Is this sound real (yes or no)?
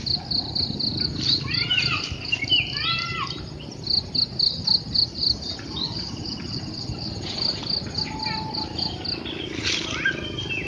yes